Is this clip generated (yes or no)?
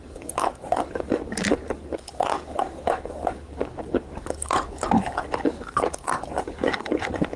yes